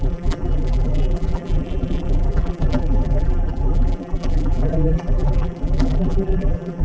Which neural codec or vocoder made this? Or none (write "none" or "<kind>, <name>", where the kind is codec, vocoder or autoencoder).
vocoder, BigVGAN v2